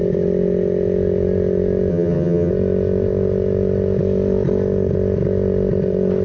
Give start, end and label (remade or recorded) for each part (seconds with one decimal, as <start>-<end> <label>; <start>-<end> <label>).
0.0-1.9 recorded; 1.9-2.5 remade; 2.5-6.2 recorded

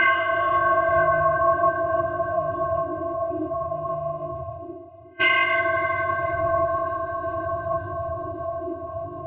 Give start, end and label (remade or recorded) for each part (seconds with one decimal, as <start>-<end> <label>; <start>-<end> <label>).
0.0-9.3 remade

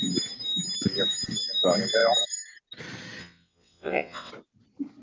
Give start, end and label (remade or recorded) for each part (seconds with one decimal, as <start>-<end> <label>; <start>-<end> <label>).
0.0-3.2 recorded; 3.2-4.3 remade; 4.3-5.0 recorded

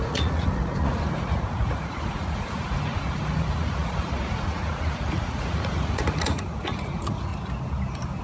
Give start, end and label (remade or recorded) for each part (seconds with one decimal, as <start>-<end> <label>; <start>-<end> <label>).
0.0-7.3 remade; 7.3-8.2 recorded